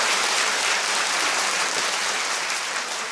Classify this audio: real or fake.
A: fake